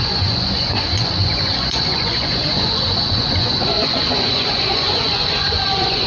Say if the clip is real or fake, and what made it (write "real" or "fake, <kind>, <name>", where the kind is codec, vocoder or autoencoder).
fake, vocoder, Vocos